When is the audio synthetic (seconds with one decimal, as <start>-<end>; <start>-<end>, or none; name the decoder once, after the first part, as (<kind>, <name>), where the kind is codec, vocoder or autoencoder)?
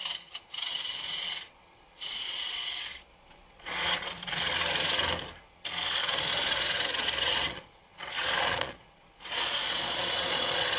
0.0-4.2 (vocoder, Vocos); 6.0-10.8